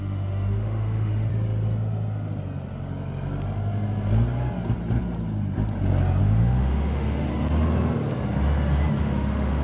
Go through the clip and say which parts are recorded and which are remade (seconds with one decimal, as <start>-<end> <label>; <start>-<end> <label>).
0.0-1.3 remade; 1.3-6.2 recorded; 6.2-7.3 remade; 7.3-9.0 recorded; 9.0-9.6 remade